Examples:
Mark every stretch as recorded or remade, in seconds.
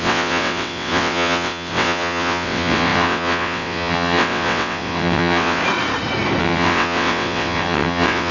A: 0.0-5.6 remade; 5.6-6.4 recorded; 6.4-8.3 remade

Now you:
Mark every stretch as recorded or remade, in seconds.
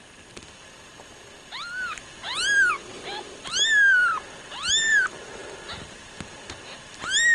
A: 0.0-7.3 recorded